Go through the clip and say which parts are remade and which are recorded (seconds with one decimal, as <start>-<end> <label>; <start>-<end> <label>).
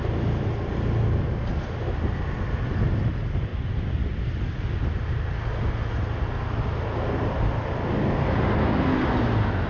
0.0-9.7 recorded